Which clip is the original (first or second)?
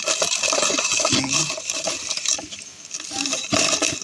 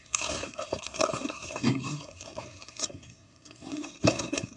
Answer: first